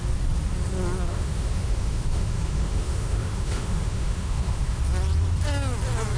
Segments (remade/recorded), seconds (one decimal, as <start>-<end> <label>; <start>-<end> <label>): 0.0-1.1 recorded; 1.1-4.8 remade; 4.8-6.2 recorded